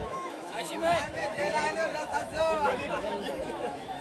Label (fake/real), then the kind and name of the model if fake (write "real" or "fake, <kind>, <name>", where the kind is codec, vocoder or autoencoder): fake, autoencoder, DAC-VAE